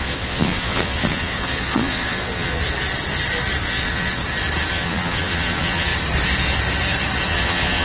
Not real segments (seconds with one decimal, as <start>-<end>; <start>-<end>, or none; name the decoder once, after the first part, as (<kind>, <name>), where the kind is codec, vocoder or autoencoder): 0.0-2.6 (vocoder, Vocos); 3.7-4.2; 4.7-5.9; 7.3-7.8